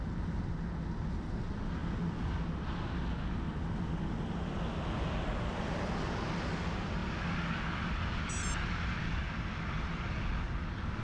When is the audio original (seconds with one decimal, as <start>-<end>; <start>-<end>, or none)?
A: 0.0-11.0